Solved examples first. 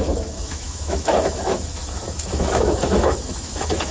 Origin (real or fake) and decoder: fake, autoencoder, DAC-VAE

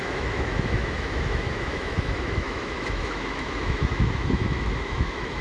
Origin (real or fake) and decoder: fake, autoencoder, DAC-VAE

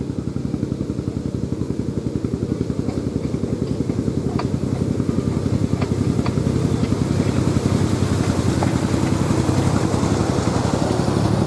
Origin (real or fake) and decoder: real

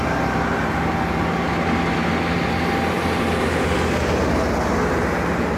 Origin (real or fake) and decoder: real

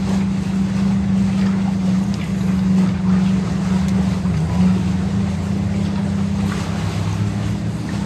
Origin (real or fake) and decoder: real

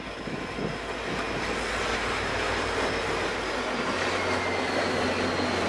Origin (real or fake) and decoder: real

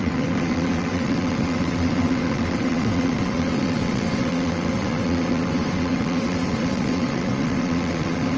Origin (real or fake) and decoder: fake, vocoder, WaveNeXt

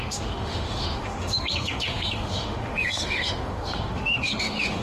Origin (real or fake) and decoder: fake, autoencoder, DAC-VAE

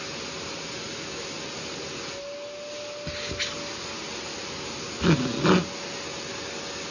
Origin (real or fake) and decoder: real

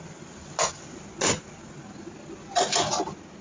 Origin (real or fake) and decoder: real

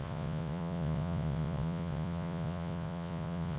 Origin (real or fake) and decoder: fake, vocoder, Vocos